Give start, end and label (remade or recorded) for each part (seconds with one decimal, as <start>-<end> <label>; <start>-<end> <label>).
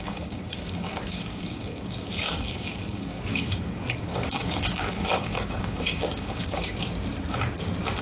0.0-6.7 remade; 6.7-8.0 recorded